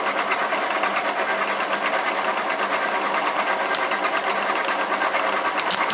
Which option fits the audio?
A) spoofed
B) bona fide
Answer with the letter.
B